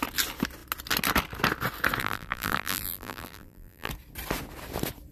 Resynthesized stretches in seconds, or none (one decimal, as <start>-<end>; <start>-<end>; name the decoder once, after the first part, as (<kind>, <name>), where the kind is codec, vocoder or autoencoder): 2.0-3.9 (vocoder, BigVGAN v2)